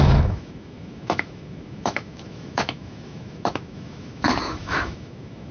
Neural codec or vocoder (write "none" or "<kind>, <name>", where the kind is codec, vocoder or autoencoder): autoencoder, DAC-VAE